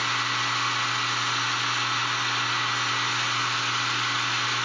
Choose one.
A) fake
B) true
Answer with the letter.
B